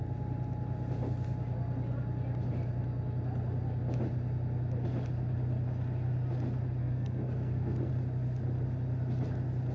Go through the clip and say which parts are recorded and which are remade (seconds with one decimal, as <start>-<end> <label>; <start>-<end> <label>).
0.0-6.8 recorded; 6.8-7.9 remade; 7.9-9.7 recorded